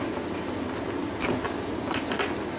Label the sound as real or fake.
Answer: real